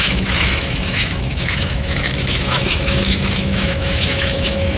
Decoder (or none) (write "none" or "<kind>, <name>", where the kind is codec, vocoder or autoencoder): autoencoder, DAC-VAE